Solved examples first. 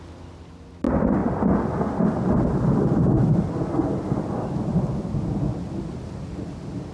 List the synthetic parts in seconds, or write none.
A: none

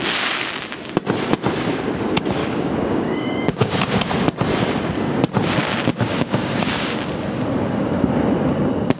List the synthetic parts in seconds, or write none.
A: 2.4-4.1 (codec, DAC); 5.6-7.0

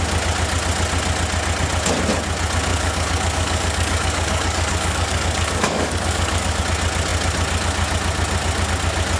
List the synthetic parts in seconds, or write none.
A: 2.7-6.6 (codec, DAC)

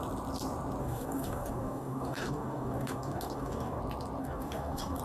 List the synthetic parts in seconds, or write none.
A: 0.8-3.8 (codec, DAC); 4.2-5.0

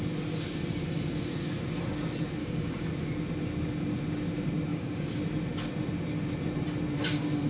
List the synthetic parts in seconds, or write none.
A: 2.4-2.9 (codec, DAC); 4.7-5.2

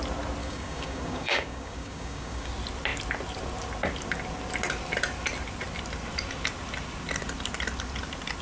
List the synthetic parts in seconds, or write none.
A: 0.4-2.5 (codec, DAC)